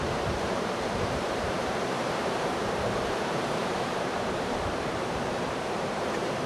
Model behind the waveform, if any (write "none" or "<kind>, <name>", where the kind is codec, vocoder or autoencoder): vocoder, BigVGAN v2